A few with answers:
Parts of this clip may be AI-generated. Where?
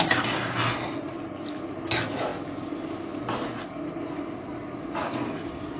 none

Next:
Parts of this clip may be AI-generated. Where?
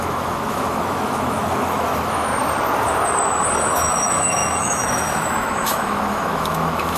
0.0-2.3 (autoencoder, DAC-VAE); 3.6-7.0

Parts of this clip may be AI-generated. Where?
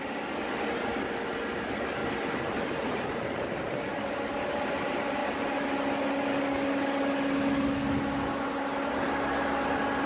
none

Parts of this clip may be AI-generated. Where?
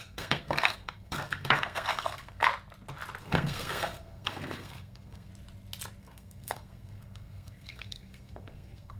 0.0-2.5 (codec, SNAC); 3.2-5.3; 6.0-9.0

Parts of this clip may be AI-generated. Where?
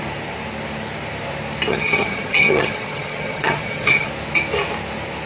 1.7-4.1 (vocoder, HiFi-GAN)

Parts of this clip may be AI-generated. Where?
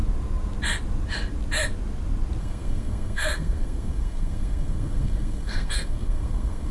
2.4-6.7 (codec, SNAC)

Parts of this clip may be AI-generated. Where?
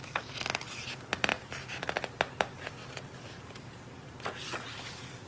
none